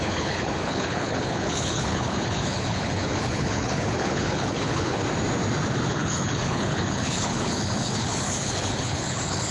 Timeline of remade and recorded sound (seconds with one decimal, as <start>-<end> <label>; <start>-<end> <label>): 0.0-5.0 remade; 5.0-5.9 recorded; 5.9-9.5 remade